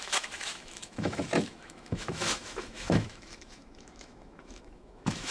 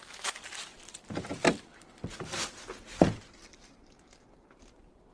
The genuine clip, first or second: second